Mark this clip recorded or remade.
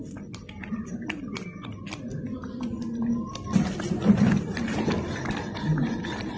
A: recorded